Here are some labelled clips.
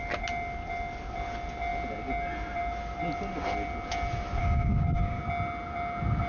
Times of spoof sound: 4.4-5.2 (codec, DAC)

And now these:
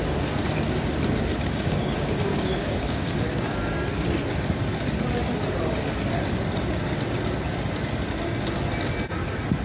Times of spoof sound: 1.3-3.7 (codec, DAC)

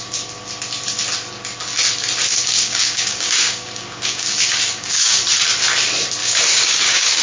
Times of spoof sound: 2.3-5.2 (codec, DAC); 6.2-7.2